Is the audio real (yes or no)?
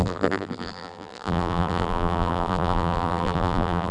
no